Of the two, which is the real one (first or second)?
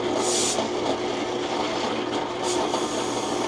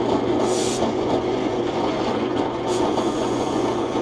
first